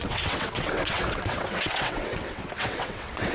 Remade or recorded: remade